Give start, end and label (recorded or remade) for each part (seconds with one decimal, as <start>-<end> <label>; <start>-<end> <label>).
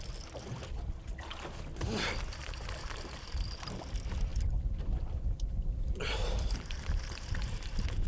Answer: 0.0-8.1 recorded